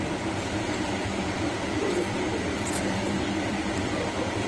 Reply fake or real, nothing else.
fake